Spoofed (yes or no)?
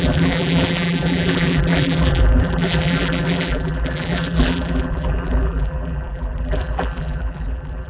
yes